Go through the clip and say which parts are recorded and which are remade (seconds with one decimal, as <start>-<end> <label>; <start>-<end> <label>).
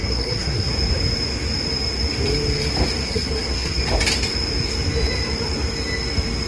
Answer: 0.0-0.7 remade; 0.7-3.0 recorded; 3.0-3.8 remade; 3.8-6.5 recorded